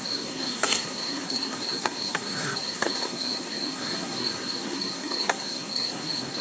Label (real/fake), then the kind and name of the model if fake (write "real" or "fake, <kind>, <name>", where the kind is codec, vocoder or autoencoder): fake, codec, SNAC